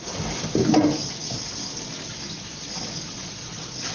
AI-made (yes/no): no